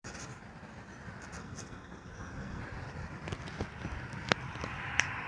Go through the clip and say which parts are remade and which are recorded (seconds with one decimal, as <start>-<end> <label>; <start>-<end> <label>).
0.0-1.4 recorded; 1.4-2.6 remade; 2.6-5.3 recorded